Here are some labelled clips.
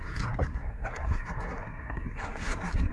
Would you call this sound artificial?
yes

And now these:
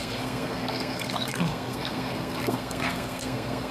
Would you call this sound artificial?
yes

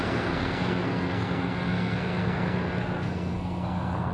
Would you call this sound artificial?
yes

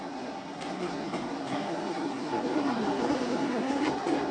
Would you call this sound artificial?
yes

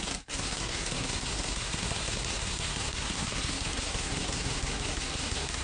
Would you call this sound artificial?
yes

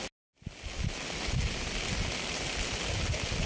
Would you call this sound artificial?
no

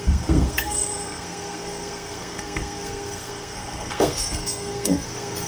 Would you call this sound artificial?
yes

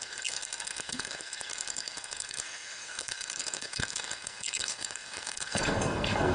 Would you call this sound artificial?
yes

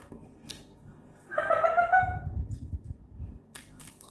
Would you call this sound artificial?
yes